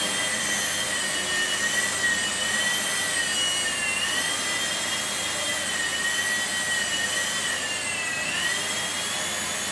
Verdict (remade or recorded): recorded